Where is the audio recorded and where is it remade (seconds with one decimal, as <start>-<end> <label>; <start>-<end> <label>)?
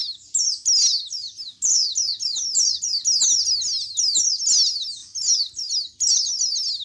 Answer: 0.0-6.8 recorded